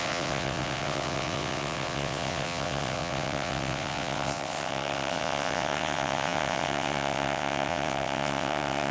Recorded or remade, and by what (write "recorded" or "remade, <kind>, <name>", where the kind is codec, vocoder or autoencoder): remade, vocoder, WaveNeXt